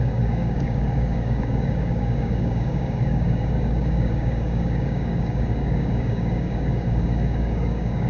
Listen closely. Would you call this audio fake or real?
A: fake